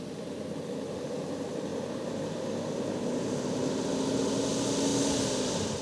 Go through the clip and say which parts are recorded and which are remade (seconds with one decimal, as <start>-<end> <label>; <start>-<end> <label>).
0.0-5.8 recorded